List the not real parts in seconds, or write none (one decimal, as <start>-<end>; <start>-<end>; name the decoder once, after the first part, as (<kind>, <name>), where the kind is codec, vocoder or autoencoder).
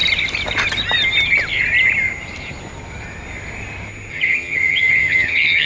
4.1-5.7 (vocoder, HiFi-GAN)